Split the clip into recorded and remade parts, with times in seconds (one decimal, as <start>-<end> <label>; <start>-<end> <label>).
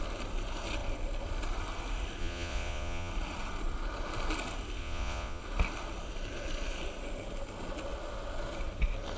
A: 0.0-2.2 recorded; 2.2-3.1 remade; 3.1-4.8 recorded; 4.8-5.4 remade; 5.4-9.2 recorded